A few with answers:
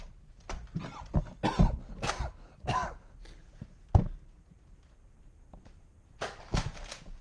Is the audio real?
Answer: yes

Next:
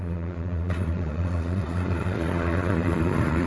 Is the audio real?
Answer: no